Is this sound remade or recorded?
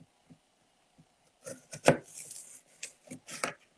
recorded